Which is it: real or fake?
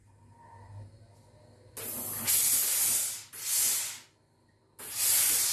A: real